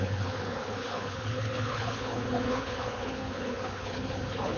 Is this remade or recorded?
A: remade